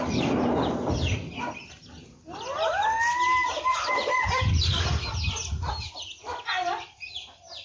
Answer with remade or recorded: recorded